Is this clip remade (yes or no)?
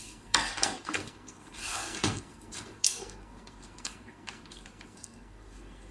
yes